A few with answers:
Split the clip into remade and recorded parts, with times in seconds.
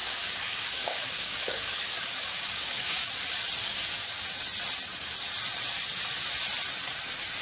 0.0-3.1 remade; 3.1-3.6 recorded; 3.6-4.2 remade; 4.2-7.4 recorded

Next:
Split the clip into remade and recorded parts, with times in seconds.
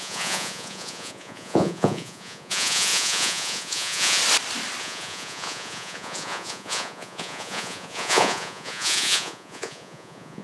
0.0-4.2 remade; 4.2-4.8 recorded; 4.8-10.4 remade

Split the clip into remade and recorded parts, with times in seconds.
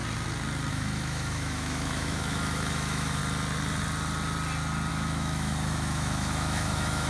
0.0-0.7 recorded; 0.7-3.2 remade; 3.2-4.9 recorded; 4.9-7.1 remade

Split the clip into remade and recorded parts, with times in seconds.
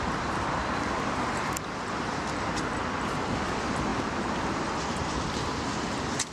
0.0-3.9 recorded; 3.9-4.6 remade; 4.6-6.3 recorded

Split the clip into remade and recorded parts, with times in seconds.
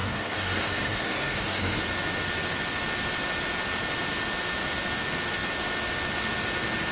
0.0-1.8 remade; 1.8-6.9 recorded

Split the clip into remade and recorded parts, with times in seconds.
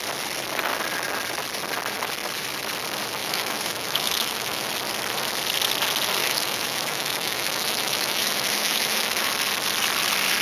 0.0-3.2 recorded; 3.2-4.7 remade; 4.7-6.2 recorded; 6.2-9.3 remade; 9.3-10.4 recorded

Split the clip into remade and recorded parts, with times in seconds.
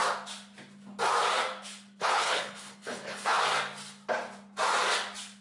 0.0-2.0 recorded; 2.0-3.4 remade; 3.4-5.4 recorded